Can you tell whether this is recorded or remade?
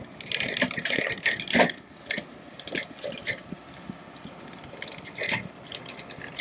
recorded